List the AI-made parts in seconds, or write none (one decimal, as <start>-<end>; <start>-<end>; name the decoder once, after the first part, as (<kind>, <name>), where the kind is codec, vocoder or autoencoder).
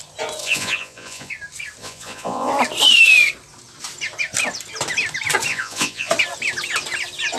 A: 0.4-1.3 (vocoder, Vocos); 1.8-2.5; 5.5-6.1